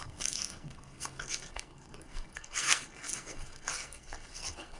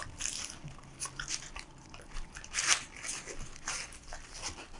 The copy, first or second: first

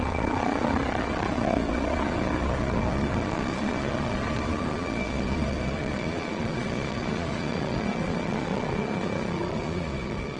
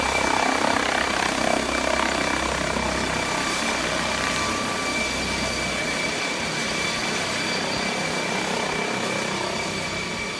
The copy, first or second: first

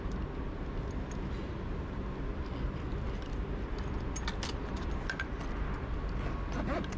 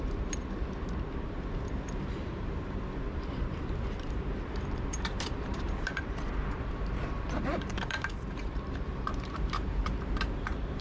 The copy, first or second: second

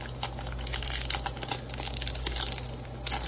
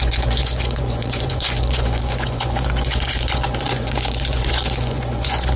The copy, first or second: second